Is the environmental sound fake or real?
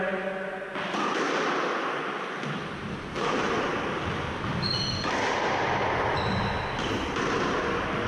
real